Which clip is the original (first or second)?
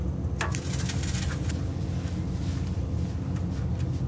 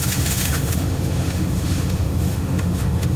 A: first